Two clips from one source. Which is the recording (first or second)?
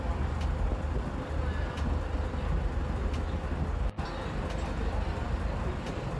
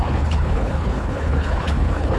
first